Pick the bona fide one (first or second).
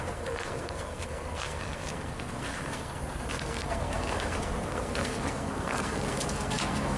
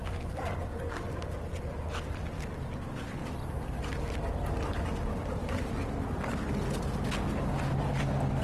second